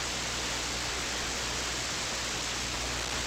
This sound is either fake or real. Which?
real